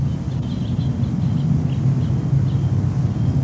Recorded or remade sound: recorded